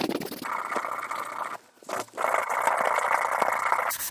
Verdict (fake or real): real